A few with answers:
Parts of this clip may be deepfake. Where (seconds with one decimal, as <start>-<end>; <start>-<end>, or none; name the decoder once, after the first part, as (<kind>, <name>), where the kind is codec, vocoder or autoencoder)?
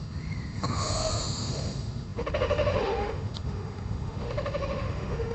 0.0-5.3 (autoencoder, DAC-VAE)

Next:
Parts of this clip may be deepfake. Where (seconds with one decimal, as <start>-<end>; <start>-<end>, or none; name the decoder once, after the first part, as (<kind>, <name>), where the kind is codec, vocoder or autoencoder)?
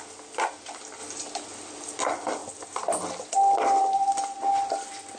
1.0-2.0 (vocoder, BigVGAN v2); 2.4-3.8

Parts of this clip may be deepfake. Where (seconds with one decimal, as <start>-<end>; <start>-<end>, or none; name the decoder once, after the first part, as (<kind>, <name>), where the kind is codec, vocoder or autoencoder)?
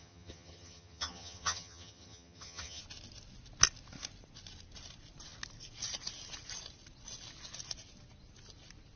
0.0-2.8 (vocoder, HiFi-GAN)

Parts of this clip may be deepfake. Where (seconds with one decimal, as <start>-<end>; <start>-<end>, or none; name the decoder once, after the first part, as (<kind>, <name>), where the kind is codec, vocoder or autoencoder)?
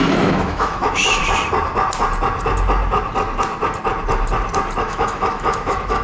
0.0-1.2 (autoencoder, DAC-VAE); 4.8-6.0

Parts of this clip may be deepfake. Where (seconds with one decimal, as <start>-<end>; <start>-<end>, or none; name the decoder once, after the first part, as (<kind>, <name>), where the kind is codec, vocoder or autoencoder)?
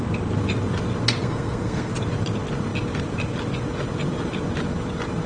1.2-1.9 (codec, SNAC)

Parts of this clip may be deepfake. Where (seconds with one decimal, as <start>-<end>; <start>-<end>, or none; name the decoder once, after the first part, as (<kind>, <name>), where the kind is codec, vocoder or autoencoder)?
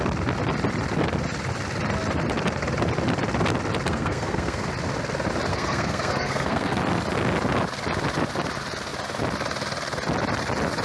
3.9-4.7 (codec, SNAC); 5.5-6.8